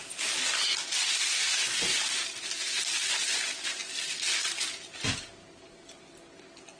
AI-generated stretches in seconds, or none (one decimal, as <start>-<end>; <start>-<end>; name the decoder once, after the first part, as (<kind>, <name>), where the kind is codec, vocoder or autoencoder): none